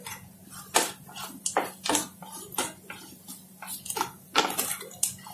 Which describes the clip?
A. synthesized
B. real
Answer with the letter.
B